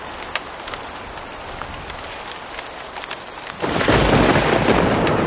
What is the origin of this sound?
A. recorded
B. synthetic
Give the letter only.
A